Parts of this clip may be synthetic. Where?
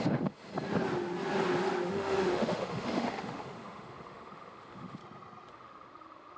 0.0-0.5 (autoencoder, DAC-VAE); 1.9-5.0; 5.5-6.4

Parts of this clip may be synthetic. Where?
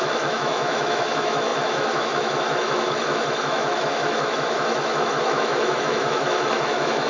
0.0-7.1 (autoencoder, DAC-VAE)